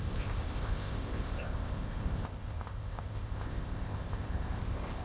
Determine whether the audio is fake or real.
fake